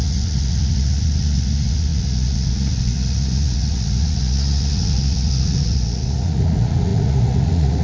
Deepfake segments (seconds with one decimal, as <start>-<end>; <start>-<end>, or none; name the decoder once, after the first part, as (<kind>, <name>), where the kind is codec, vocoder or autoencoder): 0.0-7.8 (vocoder, Vocos)